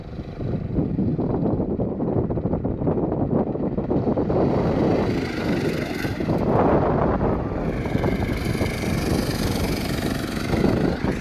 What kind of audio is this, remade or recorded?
recorded